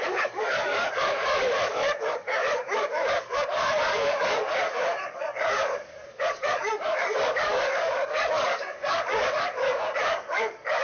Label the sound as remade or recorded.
remade